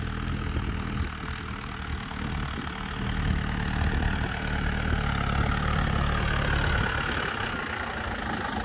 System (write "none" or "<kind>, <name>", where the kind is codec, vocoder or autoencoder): none